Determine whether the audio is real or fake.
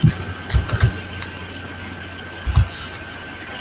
real